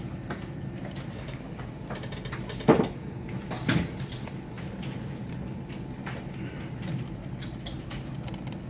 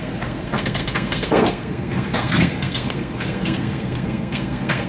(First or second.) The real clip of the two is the first